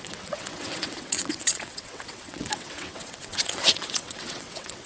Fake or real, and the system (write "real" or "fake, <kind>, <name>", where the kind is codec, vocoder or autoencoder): fake, vocoder, WaveNeXt